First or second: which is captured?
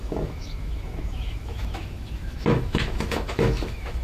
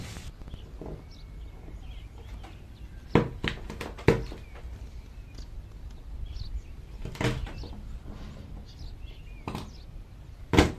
second